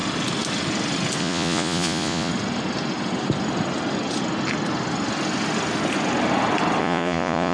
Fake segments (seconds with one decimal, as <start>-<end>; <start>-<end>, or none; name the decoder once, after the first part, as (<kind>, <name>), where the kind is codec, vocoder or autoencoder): 1.2-2.3 (vocoder, Vocos); 6.8-7.5